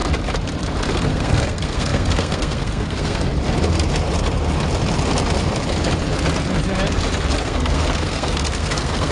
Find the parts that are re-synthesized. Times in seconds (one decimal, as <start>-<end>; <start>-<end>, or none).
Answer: 0.9-3.3; 7.4-9.1